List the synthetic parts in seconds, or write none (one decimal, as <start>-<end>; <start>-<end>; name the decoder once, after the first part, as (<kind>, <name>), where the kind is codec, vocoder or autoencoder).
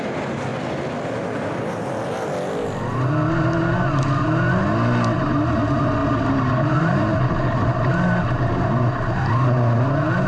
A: 6.0-7.3 (vocoder, BigVGAN v2)